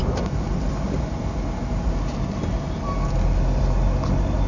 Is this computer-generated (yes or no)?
no